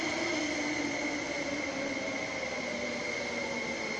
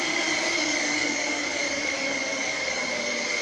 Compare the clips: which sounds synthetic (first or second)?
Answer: second